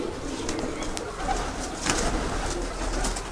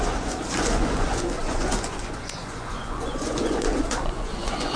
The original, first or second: first